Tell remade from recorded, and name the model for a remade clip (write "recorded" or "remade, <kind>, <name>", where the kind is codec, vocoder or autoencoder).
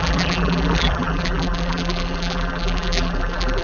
remade, vocoder, BigVGAN v2